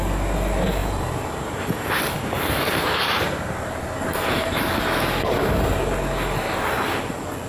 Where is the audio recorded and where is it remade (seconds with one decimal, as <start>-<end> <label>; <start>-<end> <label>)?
0.0-0.8 recorded; 0.8-4.6 remade; 4.6-7.5 recorded